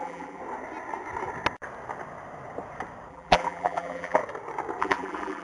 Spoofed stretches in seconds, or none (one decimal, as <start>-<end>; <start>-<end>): 0.0-0.4; 3.1-4.2; 4.8-5.4